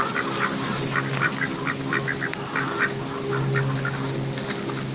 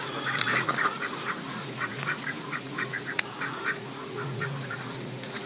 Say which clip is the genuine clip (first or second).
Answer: first